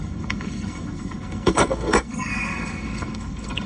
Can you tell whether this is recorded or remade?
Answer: remade